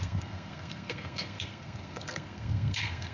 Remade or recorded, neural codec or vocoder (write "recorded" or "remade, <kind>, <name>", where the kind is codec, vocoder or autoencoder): remade, codec, SNAC